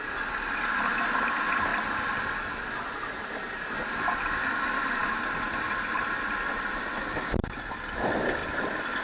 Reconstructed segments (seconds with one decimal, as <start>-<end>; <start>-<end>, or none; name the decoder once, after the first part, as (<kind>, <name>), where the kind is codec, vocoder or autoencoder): 1.7-4.0 (vocoder, BigVGAN v2); 5.0-5.8; 8.4-9.0